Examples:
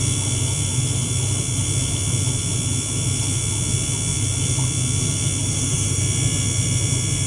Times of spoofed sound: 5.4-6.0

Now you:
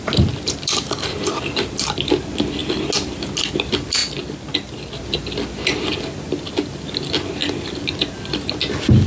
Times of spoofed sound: none

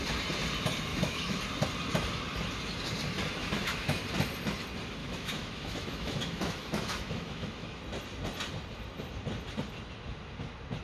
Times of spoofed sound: 0.9-1.4; 3.4-4.0; 5.0-7.8

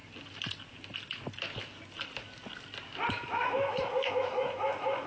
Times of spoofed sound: 3.1-5.1

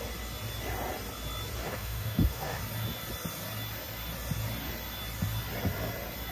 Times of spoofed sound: 1.6-2.6

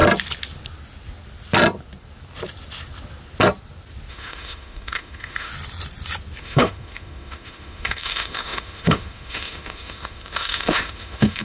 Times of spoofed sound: 4.1-5.5; 6.4-11.4

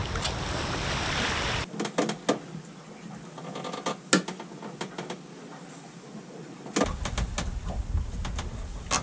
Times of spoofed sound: none

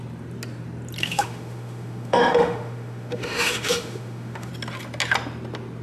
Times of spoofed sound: 1.0-4.5